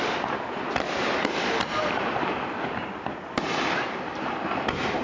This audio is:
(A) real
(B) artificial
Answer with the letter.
A